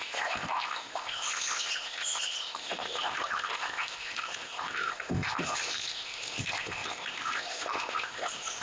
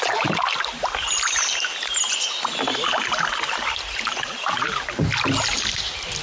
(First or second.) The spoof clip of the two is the first